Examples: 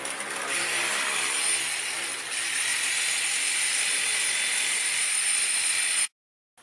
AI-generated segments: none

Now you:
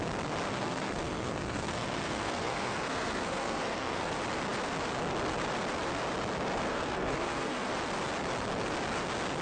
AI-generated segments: 0.5-4.1; 6.7-7.7

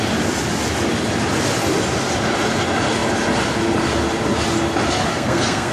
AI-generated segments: 5.1-5.7

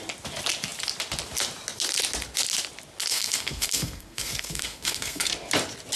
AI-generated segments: 3.1-5.3

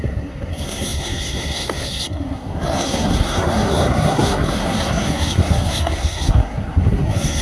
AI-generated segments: 0.0-7.4

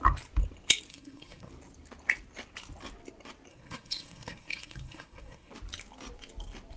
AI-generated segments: 0.9-1.5; 3.5-5.5

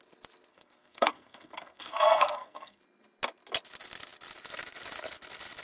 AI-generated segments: 0.5-2.8

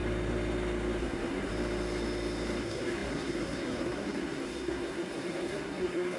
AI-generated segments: 1.0-1.5; 2.6-6.2